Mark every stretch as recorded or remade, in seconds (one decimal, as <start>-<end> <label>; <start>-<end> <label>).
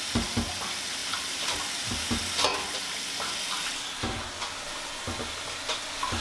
0.0-1.0 recorded; 1.0-1.6 remade; 1.6-6.2 recorded